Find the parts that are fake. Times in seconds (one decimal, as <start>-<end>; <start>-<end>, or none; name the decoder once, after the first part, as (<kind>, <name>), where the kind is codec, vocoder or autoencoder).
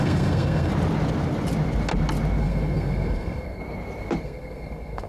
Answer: 0.0-0.7 (codec, SNAC); 2.4-3.6; 4.2-5.1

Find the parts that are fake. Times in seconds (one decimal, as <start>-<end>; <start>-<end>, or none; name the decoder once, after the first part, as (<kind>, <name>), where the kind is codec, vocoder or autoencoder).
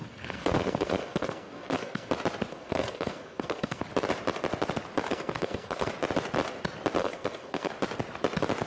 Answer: 0.0-2.1 (codec, SNAC); 2.5-3.8; 5.1-5.9; 7.0-7.7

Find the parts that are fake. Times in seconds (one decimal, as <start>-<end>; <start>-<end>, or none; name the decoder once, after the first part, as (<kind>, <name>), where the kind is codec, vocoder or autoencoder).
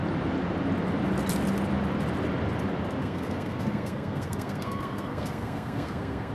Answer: 3.0-6.3 (codec, SNAC)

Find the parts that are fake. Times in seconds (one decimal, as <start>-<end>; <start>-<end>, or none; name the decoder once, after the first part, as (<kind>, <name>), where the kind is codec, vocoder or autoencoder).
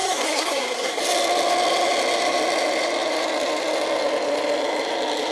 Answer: 0.0-1.0 (codec, SNAC)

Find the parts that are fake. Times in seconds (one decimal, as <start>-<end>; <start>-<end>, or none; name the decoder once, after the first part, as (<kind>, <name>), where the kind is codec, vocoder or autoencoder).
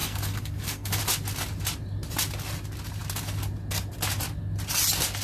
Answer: 0.0-1.0 (codec, SNAC)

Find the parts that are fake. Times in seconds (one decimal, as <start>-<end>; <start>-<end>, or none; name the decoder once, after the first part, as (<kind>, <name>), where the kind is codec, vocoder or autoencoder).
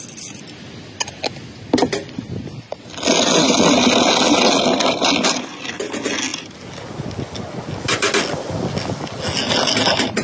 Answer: none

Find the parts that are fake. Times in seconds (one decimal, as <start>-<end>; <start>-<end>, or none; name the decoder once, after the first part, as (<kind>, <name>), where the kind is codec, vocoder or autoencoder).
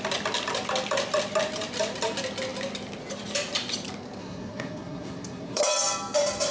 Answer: 4.2-5.6 (codec, SNAC)